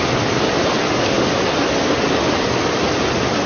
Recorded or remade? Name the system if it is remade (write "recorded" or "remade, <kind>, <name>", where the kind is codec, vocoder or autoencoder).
recorded